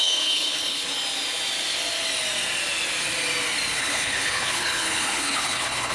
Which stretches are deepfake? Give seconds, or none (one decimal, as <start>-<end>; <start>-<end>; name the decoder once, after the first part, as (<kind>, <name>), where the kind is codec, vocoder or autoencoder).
0.0-0.9 (codec, HILCodec); 3.7-5.9